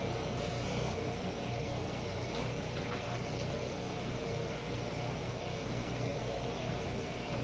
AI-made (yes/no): yes